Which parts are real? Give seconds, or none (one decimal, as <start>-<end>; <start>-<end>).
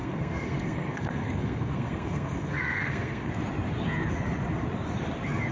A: 3.3-5.5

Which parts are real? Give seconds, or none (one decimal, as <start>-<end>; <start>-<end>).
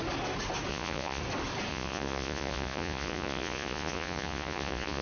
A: 0.0-0.7; 1.2-1.7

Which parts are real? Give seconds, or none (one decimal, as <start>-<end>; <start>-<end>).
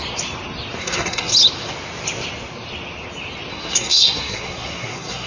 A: 0.0-0.8; 1.3-3.5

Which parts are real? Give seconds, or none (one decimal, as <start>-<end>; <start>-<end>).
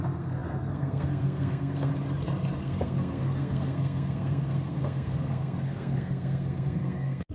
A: 1.9-2.6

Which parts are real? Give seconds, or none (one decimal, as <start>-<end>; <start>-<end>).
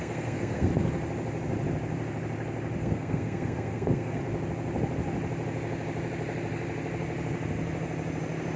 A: 0.7-2.8; 4.2-8.6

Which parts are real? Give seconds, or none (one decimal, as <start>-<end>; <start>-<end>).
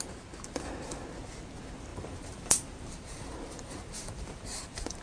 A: 0.0-1.9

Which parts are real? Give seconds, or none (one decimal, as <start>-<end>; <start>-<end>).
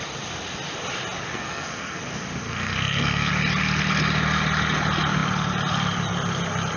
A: 0.0-1.3; 2.0-2.4; 3.3-6.8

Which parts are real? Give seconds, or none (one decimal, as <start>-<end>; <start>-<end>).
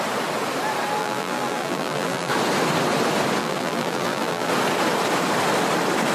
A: 0.0-1.0; 2.3-3.4; 4.5-6.1